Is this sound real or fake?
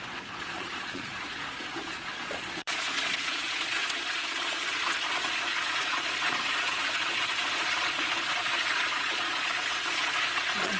fake